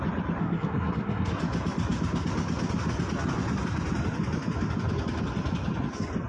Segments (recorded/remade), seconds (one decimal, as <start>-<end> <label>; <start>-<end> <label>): 0.0-0.4 recorded; 0.4-1.4 remade; 1.4-6.3 recorded